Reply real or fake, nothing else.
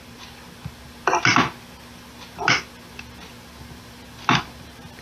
real